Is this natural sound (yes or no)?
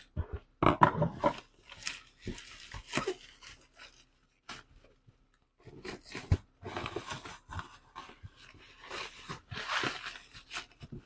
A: yes